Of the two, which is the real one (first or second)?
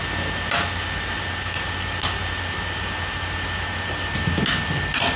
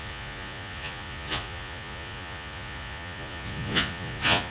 first